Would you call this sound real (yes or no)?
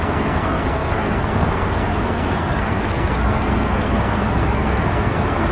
no